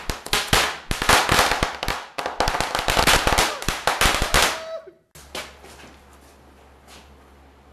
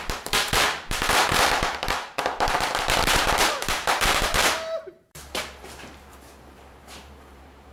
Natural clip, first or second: first